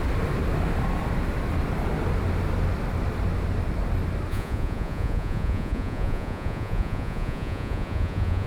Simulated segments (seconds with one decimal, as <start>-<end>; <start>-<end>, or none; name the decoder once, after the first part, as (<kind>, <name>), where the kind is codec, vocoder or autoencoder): 4.3-8.5 (vocoder, Vocos)